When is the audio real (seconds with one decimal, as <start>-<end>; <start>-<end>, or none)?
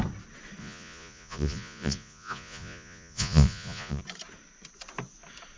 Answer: 0.0-0.6; 4.0-5.6